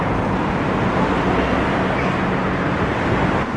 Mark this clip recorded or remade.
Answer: recorded